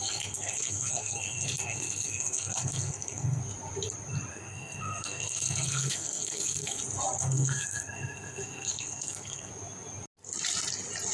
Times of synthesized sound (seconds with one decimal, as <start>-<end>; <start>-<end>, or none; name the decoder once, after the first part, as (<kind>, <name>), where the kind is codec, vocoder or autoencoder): 0.0-3.4 (codec, SNAC); 4.3-6.8; 7.2-9.5